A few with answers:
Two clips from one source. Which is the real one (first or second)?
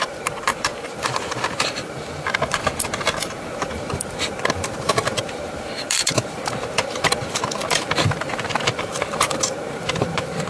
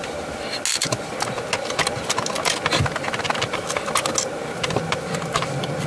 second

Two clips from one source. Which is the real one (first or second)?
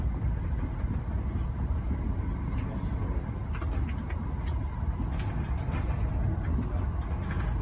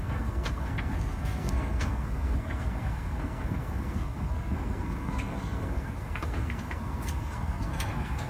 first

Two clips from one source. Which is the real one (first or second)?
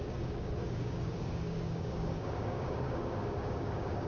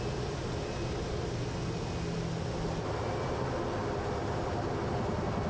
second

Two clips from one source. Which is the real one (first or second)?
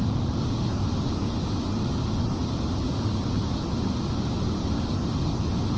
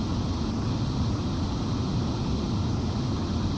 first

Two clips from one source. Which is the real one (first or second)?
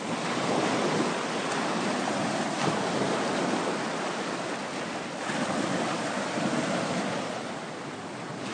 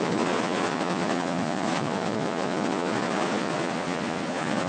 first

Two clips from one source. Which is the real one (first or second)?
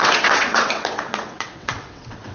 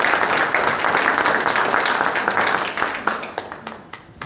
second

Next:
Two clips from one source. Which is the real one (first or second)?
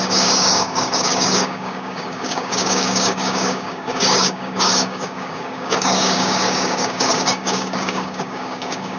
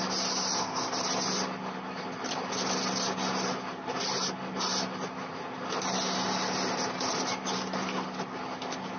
second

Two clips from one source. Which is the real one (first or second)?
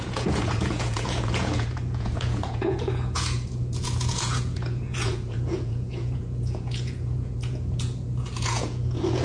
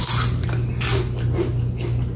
second